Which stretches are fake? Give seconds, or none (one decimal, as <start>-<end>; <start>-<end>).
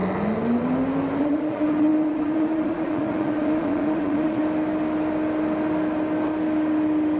1.2-4.4